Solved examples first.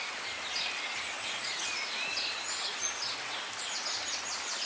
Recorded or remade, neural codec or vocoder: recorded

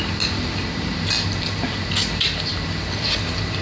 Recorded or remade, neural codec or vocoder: recorded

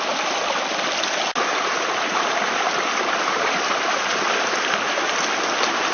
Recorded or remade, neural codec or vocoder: recorded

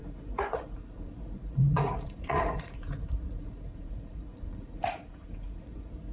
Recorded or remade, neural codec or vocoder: remade, vocoder, Vocos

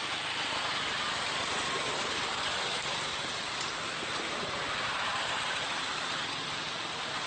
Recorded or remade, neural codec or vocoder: recorded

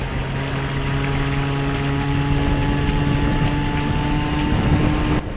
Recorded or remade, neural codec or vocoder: recorded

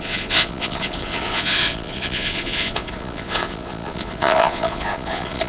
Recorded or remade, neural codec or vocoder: remade, vocoder, Vocos